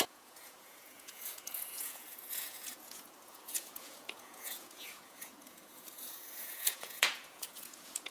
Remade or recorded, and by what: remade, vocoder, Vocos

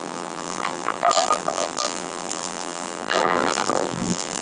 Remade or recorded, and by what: remade, vocoder, BigVGAN v2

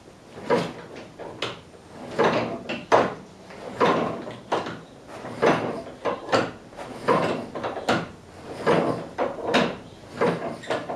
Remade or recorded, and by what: recorded